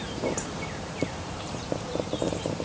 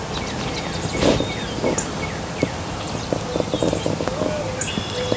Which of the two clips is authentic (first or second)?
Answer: second